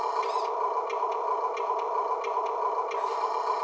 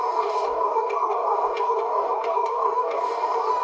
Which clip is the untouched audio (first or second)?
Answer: first